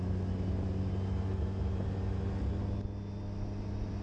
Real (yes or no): yes